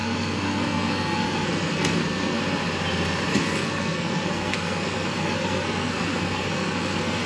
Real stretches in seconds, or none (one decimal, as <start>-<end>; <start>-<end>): 2.4-3.3